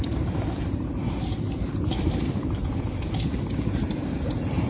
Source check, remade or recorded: remade